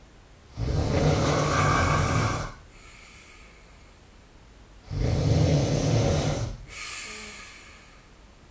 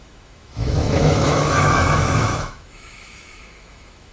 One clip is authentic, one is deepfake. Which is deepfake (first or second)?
second